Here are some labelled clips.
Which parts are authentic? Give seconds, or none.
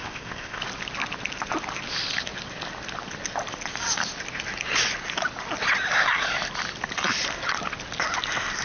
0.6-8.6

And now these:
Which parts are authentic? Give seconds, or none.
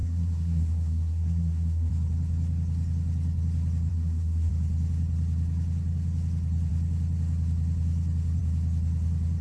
1.9-3.9; 4.5-9.4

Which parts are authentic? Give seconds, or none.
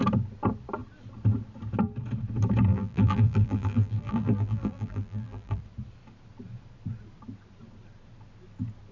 0.0-2.7; 5.6-8.9